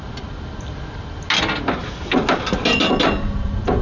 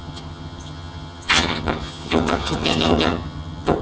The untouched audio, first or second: first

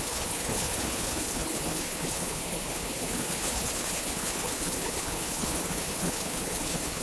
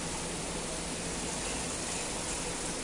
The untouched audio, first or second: second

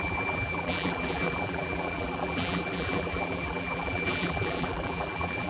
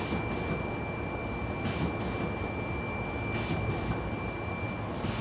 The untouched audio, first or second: second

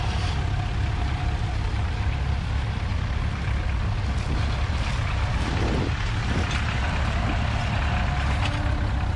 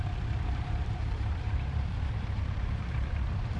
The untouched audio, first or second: first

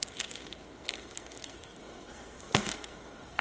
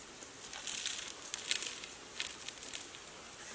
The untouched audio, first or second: second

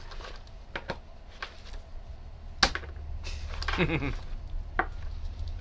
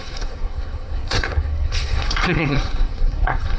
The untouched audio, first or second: first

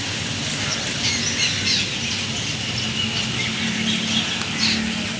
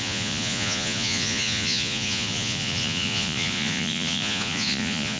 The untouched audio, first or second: first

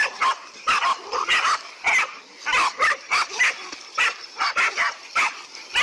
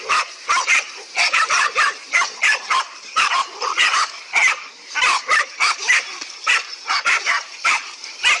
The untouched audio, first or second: first